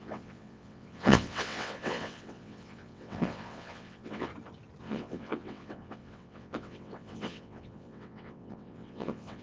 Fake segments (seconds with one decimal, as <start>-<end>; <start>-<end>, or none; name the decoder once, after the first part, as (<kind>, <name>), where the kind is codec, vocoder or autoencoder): 0.0-4.3 (vocoder, WaveNeXt); 4.8-9.4